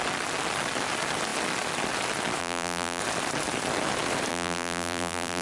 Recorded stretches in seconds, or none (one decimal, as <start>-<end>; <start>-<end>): 0.0-2.4; 3.0-4.3